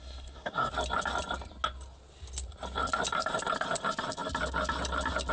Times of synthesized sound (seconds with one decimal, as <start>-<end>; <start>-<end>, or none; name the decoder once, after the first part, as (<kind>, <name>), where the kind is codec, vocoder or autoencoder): 0.0-0.7 (codec, SNAC)